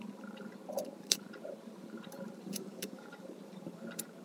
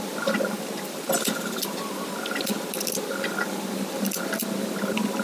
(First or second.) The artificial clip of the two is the first